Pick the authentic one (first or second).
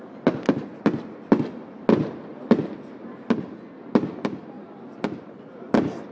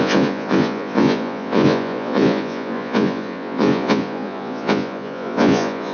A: first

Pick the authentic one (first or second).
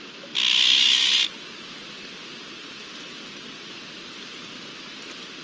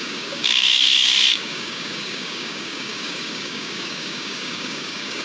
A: first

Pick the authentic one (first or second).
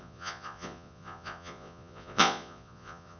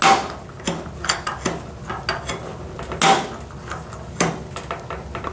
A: second